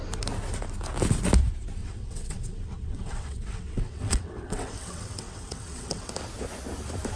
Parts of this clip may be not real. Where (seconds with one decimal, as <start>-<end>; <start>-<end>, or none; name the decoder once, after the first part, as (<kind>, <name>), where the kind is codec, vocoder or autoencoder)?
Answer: 1.8-6.1 (vocoder, WaveNeXt)